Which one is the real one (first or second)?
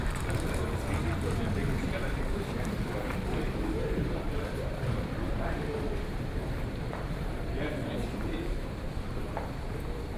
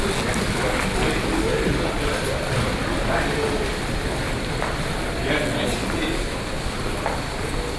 second